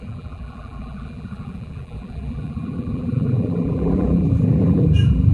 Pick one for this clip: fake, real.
fake